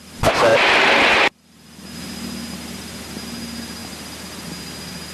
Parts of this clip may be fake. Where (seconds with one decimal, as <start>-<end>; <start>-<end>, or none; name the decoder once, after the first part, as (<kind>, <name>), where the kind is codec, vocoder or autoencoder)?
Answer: none